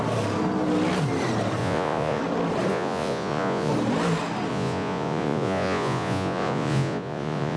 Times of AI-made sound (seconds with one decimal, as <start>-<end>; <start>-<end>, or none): 1.6-2.2; 2.7-3.7; 4.5-7.6